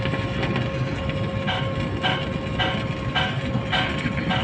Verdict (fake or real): real